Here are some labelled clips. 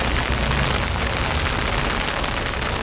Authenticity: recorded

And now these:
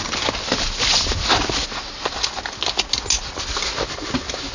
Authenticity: recorded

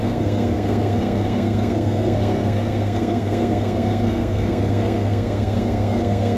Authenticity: remade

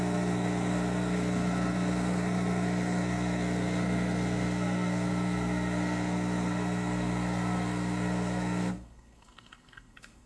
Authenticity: remade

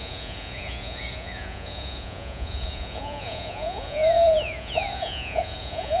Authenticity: remade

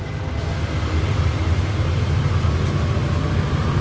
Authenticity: recorded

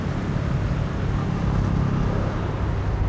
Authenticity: recorded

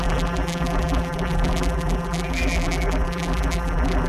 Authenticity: remade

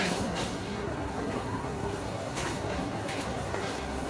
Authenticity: remade